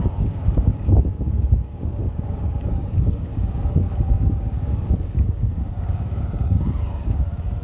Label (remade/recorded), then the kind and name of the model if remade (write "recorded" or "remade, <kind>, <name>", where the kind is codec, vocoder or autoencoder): remade, codec, DAC